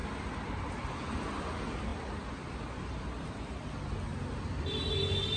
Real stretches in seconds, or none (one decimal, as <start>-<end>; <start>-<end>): 0.0-5.4

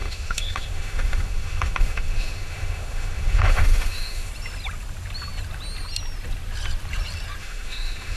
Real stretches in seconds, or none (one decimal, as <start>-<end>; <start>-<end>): 4.3-7.4

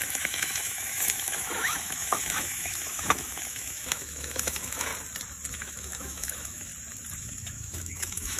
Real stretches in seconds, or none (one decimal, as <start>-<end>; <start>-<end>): 4.9-5.5; 6.7-7.2

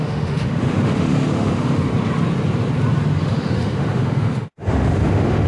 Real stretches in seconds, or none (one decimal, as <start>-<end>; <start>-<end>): 1.9-3.2

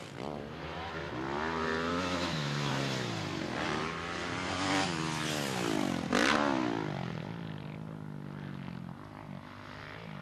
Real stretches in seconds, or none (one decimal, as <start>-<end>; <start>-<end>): 0.0-1.9; 2.7-10.2

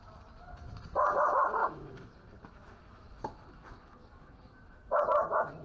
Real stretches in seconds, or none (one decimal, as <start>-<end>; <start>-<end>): 0.0-1.6; 5.0-5.6

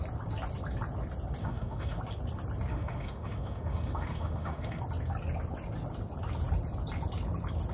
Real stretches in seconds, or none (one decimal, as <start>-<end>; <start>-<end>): 0.0-1.4; 2.0-2.7; 4.8-7.7

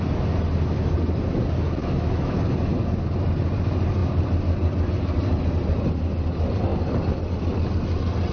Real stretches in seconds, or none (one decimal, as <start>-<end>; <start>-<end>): 0.0-1.8; 2.4-8.3